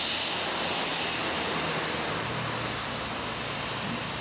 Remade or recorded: recorded